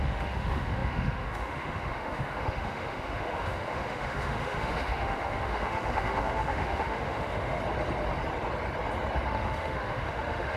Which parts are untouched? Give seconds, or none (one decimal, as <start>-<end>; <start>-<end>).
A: 7.6-9.3